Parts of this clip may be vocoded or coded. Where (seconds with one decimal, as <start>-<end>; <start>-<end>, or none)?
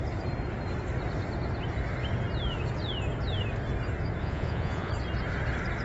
4.2-4.9